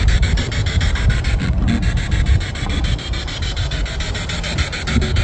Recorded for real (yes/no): yes